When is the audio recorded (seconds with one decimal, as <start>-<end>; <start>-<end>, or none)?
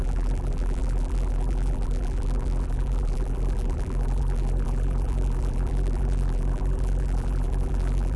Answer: none